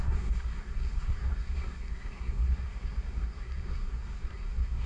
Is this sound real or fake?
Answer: fake